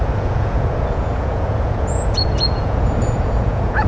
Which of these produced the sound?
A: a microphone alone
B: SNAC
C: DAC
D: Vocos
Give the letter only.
D